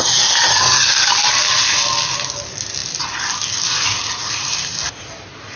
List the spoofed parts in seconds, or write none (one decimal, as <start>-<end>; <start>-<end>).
none